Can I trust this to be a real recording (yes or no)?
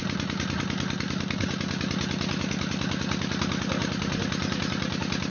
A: yes